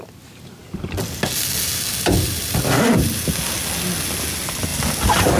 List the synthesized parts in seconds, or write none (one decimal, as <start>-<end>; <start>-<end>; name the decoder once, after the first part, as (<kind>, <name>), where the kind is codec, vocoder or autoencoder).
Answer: none